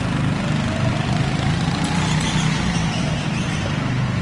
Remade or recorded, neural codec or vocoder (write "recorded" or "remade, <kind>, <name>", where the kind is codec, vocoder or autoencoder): recorded